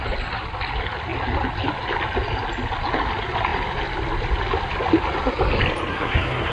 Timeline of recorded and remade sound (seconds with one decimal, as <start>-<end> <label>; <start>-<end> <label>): 0.0-5.9 recorded; 5.9-6.5 remade